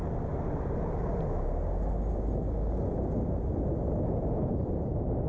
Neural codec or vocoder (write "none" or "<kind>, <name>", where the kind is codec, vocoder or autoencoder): none